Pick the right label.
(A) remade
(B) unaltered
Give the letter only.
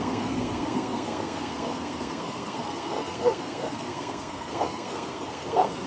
A